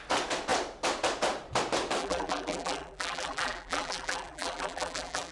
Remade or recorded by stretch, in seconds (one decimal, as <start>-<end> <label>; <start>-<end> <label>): 0.0-2.0 recorded; 2.0-5.3 remade